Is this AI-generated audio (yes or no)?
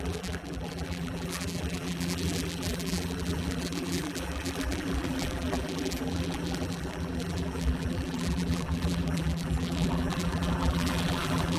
yes